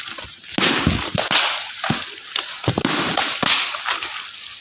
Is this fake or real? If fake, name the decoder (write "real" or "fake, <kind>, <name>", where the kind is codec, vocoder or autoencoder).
real